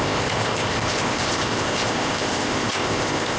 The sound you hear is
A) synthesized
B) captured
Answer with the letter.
A